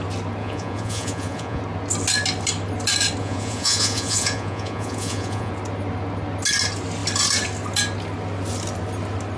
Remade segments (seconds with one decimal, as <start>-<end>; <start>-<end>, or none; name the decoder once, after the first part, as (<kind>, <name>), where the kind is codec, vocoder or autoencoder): 0.4-1.6 (vocoder, Vocos); 3.2-5.5